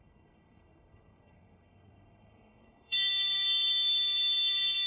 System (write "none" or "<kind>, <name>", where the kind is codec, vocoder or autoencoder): codec, SNAC